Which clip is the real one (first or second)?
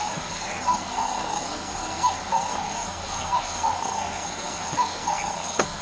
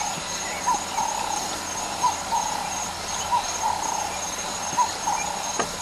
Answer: second